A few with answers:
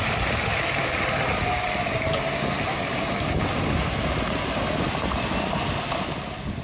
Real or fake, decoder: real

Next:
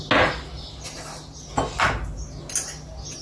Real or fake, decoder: real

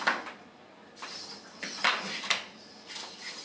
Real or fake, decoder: real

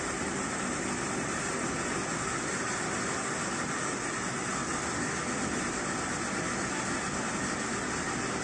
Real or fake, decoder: real